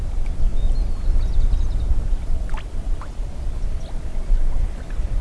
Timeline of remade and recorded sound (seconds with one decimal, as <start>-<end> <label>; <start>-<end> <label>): 0.0-5.2 recorded